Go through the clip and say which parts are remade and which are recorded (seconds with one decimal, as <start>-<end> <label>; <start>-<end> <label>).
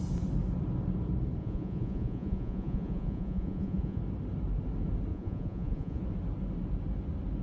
0.0-1.4 recorded; 1.4-4.0 remade; 4.0-5.1 recorded; 5.1-6.0 remade; 6.0-7.4 recorded